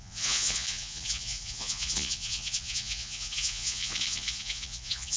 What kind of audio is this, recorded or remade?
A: remade